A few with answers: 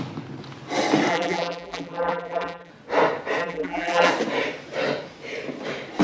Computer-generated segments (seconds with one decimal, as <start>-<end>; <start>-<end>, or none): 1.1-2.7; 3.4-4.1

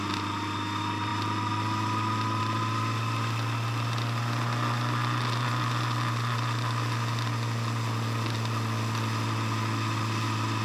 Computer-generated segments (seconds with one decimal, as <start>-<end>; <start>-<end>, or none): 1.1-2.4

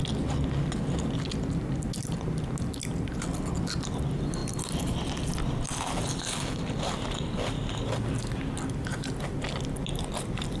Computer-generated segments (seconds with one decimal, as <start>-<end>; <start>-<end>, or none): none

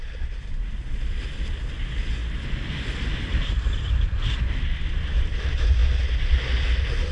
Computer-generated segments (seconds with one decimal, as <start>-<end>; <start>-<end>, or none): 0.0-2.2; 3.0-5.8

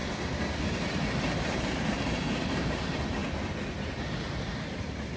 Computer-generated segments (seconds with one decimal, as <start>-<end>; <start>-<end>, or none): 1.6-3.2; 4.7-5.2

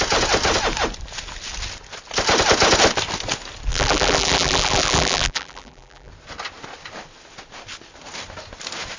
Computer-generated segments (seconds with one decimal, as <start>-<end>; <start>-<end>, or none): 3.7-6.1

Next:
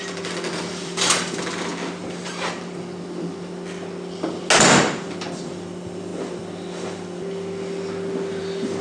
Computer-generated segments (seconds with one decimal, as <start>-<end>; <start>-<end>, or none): 0.0-1.7; 5.5-6.1; 8.4-8.8

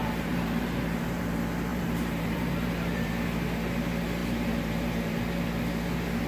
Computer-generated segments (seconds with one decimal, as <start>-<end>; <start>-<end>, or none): 0.0-1.2; 1.7-3.1; 4.2-5.2